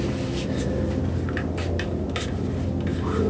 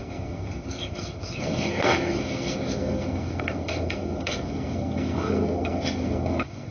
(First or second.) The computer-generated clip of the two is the second